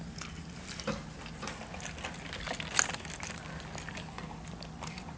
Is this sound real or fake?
real